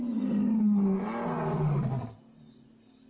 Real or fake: real